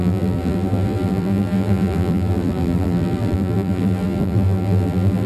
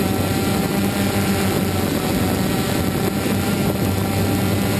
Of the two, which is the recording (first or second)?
second